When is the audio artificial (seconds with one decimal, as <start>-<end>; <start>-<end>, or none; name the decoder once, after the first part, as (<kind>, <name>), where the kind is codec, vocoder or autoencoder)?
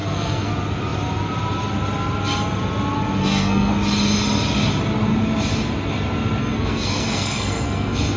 0.0-0.5 (codec, SNAC); 3.2-3.7; 6.4-8.2